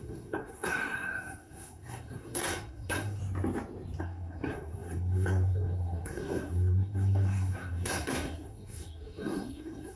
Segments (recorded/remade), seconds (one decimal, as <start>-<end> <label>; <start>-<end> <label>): 0.0-3.2 remade; 3.2-4.0 recorded; 4.0-10.0 remade